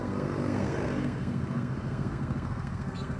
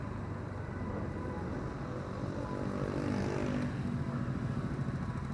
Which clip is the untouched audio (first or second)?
second